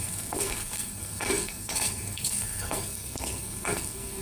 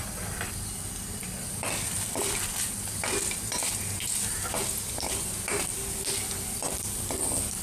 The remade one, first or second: first